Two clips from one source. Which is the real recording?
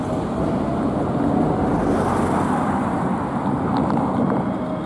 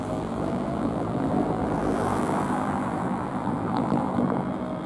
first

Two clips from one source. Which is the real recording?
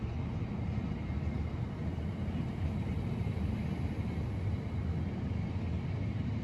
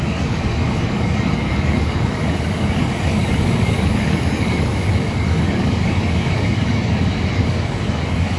first